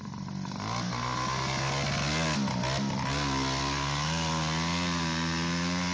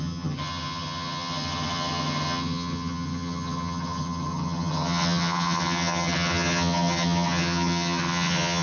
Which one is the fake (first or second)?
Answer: second